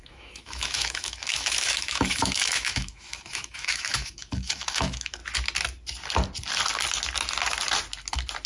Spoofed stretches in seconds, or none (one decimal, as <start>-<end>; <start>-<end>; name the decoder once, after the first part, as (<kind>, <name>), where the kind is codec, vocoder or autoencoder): 0.0-5.2 (autoencoder, DAC-VAE)